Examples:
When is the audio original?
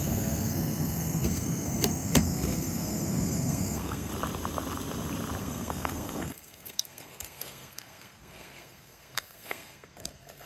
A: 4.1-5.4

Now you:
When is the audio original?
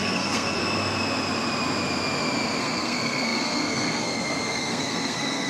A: 0.6-2.6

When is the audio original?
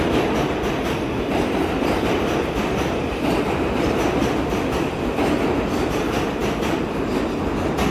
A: 0.0-7.9